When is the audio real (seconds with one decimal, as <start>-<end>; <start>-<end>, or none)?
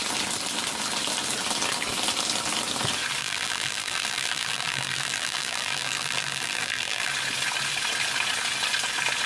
0.0-3.2; 7.1-9.3